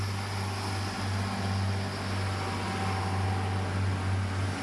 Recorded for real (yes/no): yes